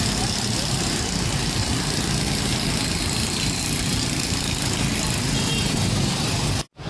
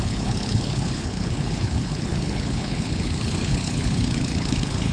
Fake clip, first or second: second